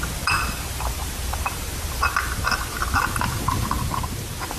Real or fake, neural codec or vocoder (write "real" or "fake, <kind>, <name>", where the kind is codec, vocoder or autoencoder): real